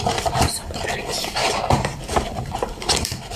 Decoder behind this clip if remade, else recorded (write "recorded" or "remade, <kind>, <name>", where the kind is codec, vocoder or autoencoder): remade, vocoder, BigVGAN v2